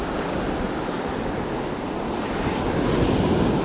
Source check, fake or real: real